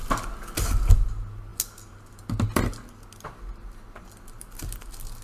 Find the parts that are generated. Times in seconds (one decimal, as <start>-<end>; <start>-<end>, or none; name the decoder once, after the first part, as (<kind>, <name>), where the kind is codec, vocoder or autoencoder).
none